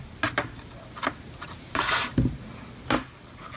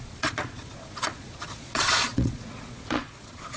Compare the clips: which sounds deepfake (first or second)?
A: second